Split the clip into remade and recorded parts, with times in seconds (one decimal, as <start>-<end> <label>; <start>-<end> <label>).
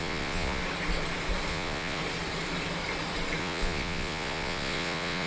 0.0-0.6 remade; 0.6-1.5 recorded; 1.5-2.0 remade; 2.0-3.4 recorded; 3.4-5.3 remade